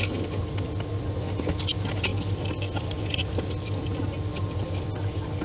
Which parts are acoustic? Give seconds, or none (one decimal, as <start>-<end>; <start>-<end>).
0.0-2.1; 2.8-4.3